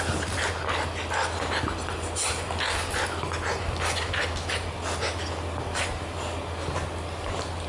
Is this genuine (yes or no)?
yes